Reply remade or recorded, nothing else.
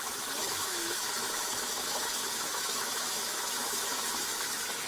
remade